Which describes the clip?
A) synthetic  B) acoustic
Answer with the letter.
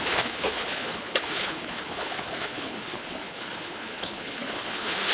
A